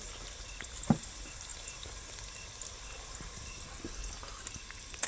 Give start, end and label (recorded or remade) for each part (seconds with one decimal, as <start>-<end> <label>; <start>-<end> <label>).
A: 0.0-5.1 recorded